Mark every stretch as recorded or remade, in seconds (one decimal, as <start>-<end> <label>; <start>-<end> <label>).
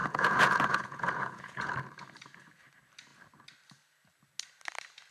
0.0-1.7 remade; 1.7-5.1 recorded